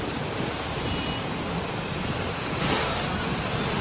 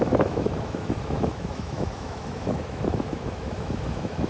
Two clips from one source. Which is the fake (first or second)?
second